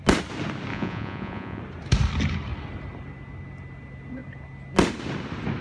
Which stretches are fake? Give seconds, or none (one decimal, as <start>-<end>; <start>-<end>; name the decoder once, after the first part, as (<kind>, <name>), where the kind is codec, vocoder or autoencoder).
0.7-1.6 (vocoder, Vocos)